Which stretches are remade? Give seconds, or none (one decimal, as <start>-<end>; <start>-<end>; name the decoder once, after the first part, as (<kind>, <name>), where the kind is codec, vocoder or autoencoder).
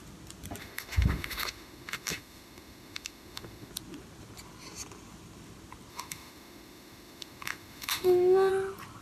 0.6-3.7 (autoencoder, DAC-VAE); 5.9-8.5